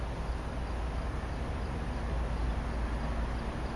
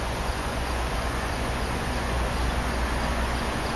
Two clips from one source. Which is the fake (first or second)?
second